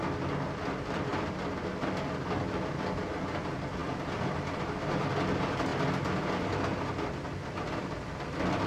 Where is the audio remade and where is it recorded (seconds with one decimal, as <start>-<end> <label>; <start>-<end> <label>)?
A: 0.0-8.7 recorded